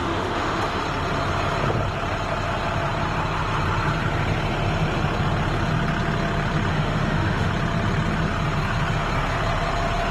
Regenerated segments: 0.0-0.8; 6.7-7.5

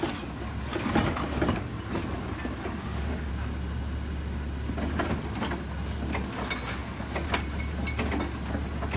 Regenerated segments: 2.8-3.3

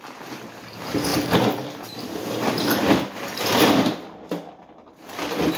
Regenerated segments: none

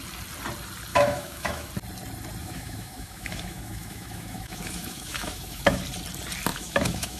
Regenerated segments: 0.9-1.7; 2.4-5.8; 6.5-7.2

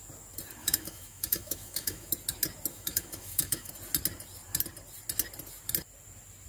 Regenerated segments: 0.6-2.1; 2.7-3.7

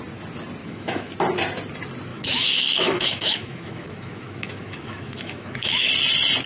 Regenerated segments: 0.6-1.1; 2.1-5.9